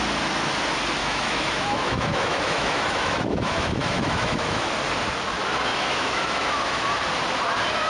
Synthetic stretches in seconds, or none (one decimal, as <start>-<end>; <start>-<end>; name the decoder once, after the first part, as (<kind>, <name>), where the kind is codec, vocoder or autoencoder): 1.0-4.7 (autoencoder, DAC-VAE); 5.7-6.8